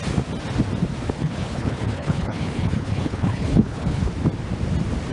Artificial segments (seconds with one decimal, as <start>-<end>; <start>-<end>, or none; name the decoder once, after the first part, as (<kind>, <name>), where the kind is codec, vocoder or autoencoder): 1.2-4.1 (codec, HILCodec)